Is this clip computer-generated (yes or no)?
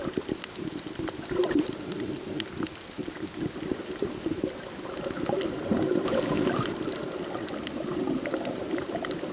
no